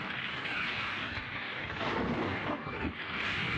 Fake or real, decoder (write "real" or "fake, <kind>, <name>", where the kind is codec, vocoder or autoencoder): fake, codec, DAC